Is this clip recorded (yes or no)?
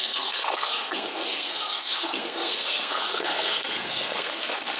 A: no